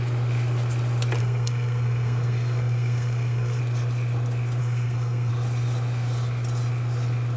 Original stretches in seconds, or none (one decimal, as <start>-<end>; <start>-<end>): 0.0-1.2; 3.6-4.6; 5.3-7.4